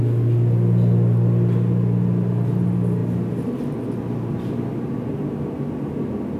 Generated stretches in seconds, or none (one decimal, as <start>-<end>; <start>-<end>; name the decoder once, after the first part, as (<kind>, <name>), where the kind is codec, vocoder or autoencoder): none